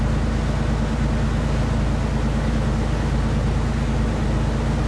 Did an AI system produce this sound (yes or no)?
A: no